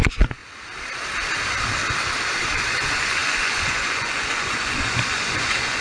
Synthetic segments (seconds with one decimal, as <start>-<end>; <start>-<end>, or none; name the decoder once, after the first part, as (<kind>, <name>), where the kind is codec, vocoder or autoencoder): 0.0-0.4 (vocoder, Vocos); 2.5-5.8